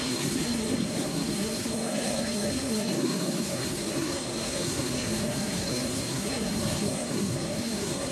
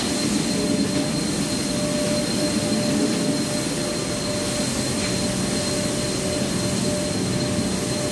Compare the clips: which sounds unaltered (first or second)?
second